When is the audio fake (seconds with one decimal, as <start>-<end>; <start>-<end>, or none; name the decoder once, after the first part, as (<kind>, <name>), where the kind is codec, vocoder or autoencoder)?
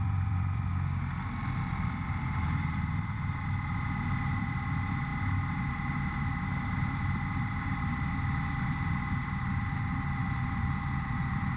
0.0-0.7 (vocoder, BigVGAN v2); 1.7-11.6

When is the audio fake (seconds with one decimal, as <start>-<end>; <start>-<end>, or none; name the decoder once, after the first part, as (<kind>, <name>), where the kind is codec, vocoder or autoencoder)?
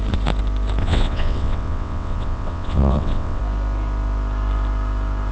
0.8-3.4 (vocoder, WaveNeXt)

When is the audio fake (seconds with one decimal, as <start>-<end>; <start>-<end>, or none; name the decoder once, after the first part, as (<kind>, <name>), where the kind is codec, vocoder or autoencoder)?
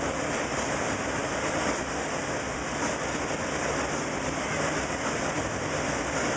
0.0-6.4 (vocoder, BigVGAN v2)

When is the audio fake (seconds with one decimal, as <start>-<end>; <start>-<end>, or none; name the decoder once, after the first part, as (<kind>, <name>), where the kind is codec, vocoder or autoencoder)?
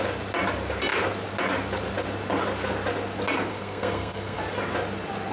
3.5-4.4 (codec, SNAC)